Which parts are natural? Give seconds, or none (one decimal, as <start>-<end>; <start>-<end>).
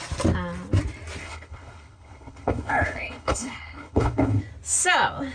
0.0-1.2; 4.4-5.3